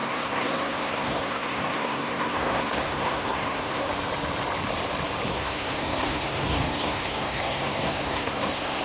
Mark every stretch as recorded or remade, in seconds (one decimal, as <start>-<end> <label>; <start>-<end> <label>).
0.0-3.9 remade; 3.9-5.3 recorded; 5.3-8.8 remade